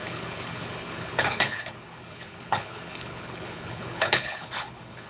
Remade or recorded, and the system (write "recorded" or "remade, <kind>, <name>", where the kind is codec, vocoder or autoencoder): remade, codec, HILCodec